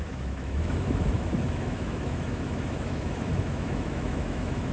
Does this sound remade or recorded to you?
remade